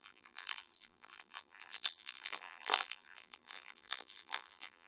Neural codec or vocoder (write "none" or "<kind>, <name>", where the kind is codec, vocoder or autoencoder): vocoder, BigVGAN v2